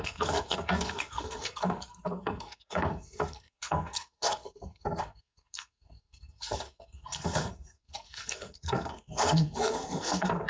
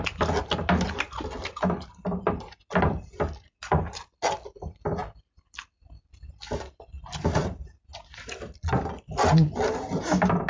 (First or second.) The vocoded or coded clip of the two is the first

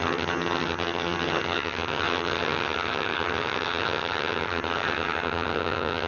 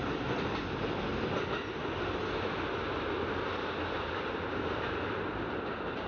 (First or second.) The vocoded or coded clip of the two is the first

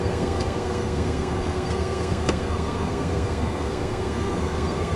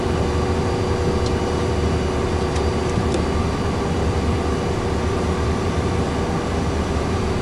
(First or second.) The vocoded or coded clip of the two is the first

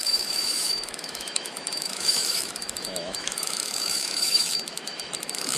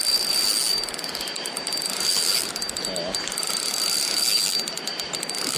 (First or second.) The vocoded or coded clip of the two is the first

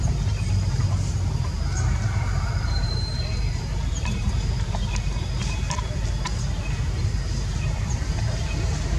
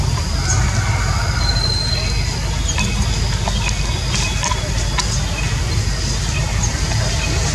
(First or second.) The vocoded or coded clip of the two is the first